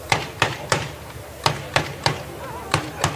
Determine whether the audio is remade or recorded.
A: recorded